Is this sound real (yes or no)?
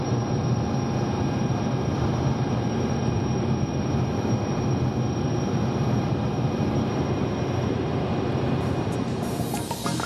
no